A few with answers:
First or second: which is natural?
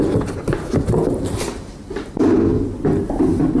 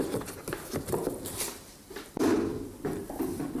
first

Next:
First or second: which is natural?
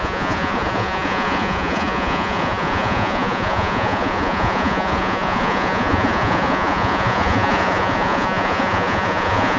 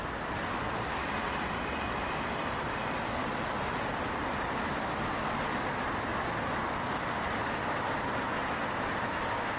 second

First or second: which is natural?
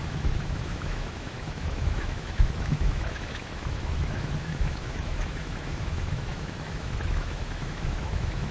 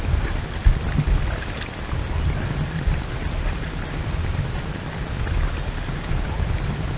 second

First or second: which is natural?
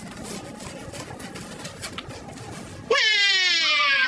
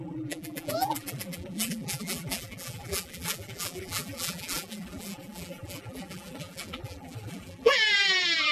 first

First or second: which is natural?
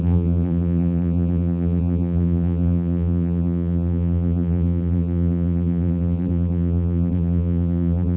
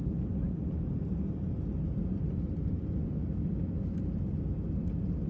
second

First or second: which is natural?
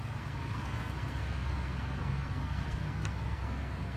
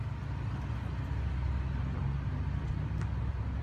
second